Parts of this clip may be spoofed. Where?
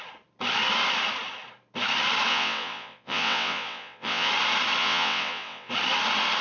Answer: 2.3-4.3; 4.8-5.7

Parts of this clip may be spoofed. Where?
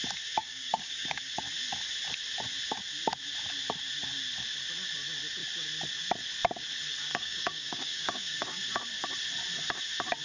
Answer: 0.4-1.2; 7.1-8.6